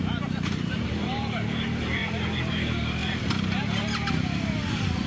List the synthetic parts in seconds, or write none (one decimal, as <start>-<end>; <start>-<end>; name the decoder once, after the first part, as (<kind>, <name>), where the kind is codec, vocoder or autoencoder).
0.0-2.0 (vocoder, BigVGAN v2); 2.5-3.0; 4.1-5.1